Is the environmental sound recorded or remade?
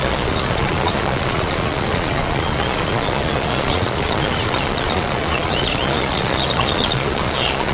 remade